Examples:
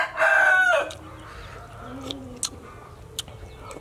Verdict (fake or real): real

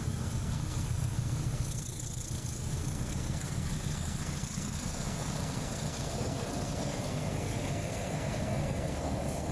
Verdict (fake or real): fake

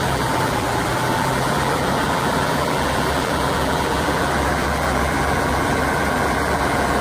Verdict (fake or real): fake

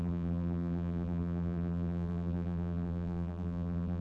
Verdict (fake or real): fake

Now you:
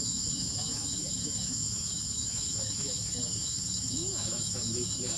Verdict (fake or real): fake